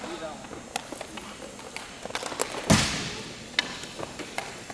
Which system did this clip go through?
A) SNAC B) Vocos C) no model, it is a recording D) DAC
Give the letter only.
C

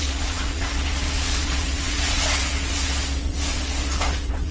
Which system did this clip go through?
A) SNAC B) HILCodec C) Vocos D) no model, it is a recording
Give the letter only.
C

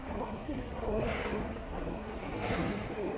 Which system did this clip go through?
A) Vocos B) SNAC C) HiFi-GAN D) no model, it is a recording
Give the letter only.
B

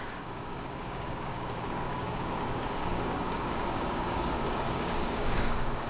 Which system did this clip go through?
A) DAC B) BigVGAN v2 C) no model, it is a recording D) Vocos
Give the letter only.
A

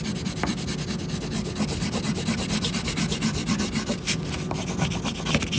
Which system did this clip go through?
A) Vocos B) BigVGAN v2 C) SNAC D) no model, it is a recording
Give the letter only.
D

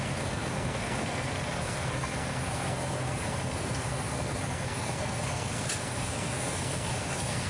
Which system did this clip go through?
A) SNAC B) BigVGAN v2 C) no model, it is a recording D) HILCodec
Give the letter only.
A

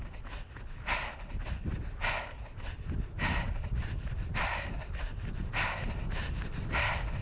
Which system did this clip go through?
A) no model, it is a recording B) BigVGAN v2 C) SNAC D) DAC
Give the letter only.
A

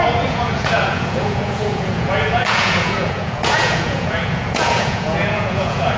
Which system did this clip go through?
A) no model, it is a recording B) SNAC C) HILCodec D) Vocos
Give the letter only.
D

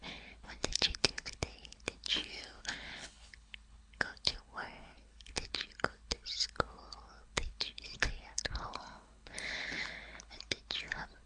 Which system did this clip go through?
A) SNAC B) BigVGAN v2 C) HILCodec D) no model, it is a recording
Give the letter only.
C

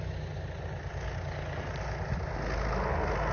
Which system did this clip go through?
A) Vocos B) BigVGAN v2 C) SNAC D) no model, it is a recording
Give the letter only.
D